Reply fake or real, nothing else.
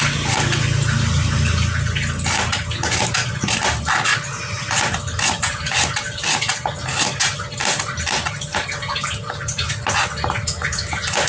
real